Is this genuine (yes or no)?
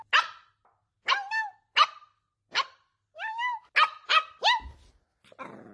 yes